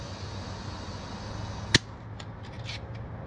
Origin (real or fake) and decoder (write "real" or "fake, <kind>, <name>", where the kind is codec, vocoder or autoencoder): real